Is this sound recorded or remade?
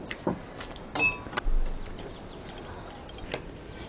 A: recorded